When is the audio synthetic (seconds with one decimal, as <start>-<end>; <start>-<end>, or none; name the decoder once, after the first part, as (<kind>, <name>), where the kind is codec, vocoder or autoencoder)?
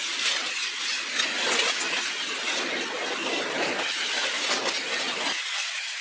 none